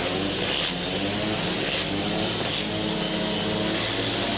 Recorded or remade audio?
recorded